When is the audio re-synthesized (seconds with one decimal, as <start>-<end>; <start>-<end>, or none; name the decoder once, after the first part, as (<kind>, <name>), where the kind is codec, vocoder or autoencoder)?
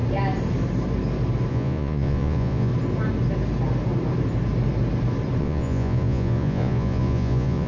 1.5-2.7 (vocoder, Vocos); 5.4-7.7